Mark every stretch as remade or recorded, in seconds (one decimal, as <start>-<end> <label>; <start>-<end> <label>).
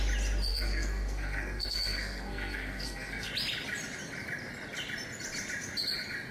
0.0-0.5 recorded; 0.5-3.3 remade; 3.3-6.3 recorded